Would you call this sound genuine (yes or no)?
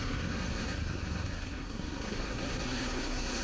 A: no